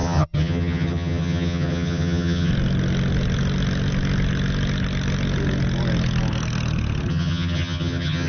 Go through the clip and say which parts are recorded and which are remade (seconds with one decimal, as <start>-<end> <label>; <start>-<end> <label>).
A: 0.0-2.5 remade; 2.5-7.1 recorded; 7.1-8.3 remade